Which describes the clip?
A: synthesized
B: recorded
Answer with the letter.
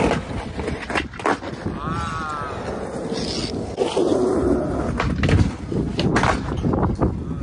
B